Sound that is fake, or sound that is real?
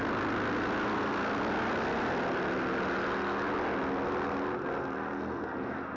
real